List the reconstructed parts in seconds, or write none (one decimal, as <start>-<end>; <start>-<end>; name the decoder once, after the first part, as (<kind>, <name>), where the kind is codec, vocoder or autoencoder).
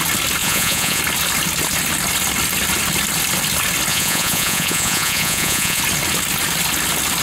0.4-1.0 (vocoder, Vocos); 3.9-5.8